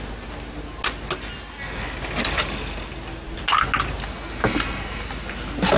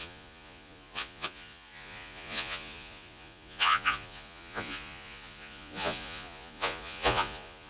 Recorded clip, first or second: first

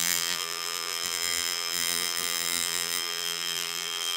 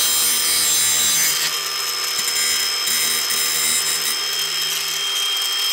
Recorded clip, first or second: second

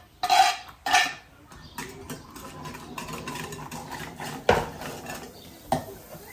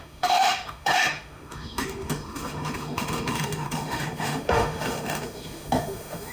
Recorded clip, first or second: first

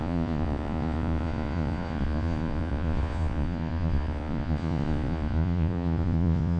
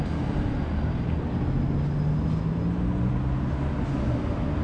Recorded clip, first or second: second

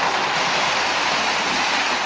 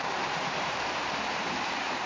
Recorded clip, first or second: first